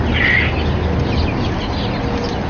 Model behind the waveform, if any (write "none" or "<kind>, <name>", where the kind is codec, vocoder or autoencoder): none